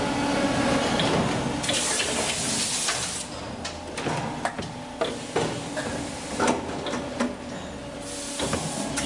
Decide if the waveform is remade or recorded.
recorded